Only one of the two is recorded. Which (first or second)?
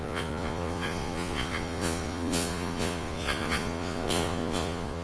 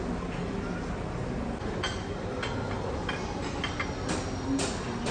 second